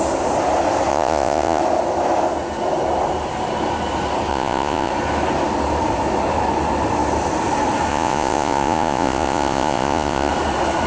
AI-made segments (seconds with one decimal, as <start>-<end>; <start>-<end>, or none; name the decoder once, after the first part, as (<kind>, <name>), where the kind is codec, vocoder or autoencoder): 0.9-1.6 (vocoder, Vocos); 4.3-4.9; 7.9-10.3

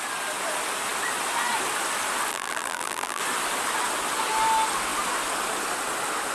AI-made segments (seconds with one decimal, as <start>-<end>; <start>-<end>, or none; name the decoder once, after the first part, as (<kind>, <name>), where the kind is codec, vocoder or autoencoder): 2.3-3.2 (vocoder, BigVGAN v2)